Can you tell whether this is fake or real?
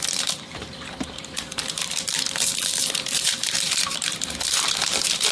fake